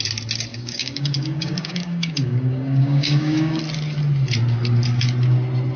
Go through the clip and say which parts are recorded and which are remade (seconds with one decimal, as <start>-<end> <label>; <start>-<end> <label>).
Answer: 0.0-0.5 recorded; 0.5-3.6 remade; 3.6-5.8 recorded